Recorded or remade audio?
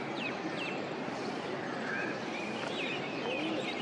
recorded